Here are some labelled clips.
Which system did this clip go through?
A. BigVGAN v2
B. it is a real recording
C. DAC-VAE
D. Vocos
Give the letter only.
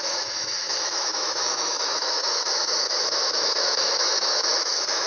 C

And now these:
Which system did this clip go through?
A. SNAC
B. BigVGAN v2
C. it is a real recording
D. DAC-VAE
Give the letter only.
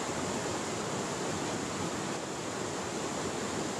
C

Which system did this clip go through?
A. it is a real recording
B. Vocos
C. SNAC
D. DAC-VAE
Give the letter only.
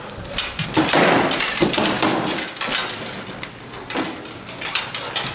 A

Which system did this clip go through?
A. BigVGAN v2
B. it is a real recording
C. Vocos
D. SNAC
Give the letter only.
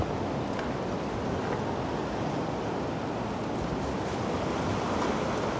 B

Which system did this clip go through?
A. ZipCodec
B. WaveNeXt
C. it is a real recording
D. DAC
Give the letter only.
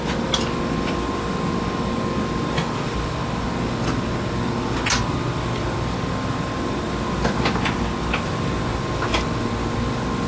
C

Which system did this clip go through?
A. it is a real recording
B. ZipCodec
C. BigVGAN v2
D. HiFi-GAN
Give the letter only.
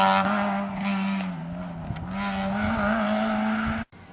A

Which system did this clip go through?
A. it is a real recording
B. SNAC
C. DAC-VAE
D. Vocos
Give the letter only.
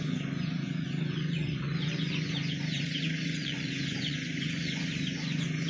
D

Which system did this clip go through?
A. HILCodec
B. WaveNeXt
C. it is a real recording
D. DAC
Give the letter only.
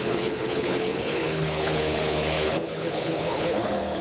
A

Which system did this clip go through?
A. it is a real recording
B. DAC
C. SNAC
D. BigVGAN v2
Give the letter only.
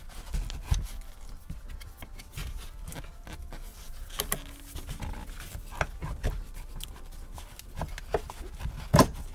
A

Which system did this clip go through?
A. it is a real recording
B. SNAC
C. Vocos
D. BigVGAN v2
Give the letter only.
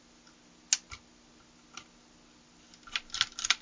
A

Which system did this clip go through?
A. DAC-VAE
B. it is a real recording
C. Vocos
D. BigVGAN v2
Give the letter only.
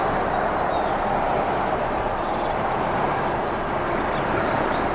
B